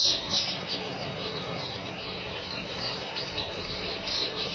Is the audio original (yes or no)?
no